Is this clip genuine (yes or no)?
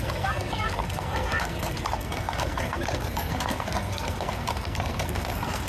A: no